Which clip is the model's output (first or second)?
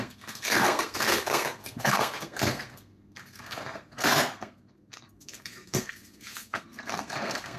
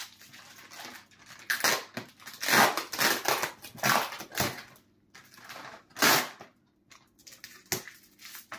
first